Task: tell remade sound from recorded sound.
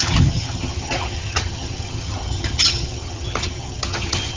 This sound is remade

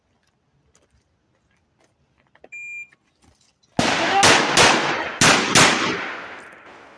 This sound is recorded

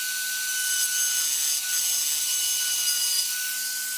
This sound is recorded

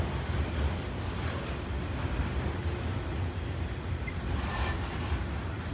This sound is recorded